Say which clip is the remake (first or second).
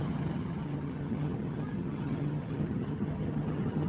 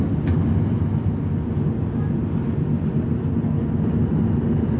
first